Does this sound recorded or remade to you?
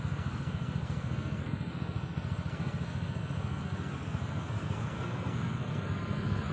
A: remade